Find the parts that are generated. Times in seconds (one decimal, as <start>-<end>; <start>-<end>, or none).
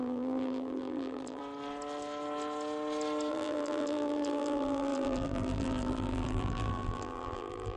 0.0-1.4; 3.3-7.8